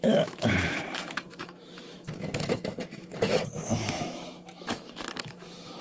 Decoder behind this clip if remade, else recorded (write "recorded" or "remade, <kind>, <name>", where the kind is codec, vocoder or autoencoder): remade, autoencoder, DAC-VAE